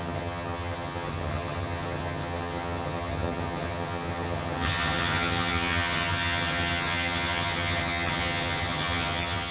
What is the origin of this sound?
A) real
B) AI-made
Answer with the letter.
B